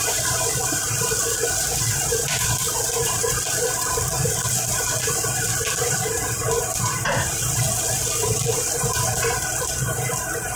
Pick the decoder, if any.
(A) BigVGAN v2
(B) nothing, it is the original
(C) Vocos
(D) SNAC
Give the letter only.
A